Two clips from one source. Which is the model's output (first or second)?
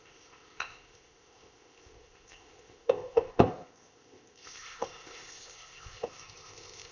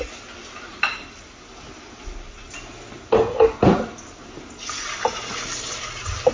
first